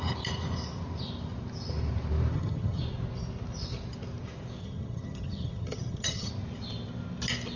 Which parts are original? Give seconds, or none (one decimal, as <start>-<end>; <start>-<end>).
0.0-2.3; 2.8-4.6; 6.3-7.6